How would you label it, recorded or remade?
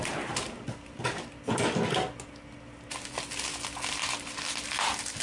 recorded